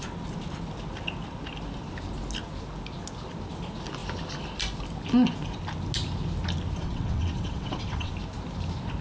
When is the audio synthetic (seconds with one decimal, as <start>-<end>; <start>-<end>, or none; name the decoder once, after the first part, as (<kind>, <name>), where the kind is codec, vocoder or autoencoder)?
6.8-8.1 (vocoder, WaveNeXt)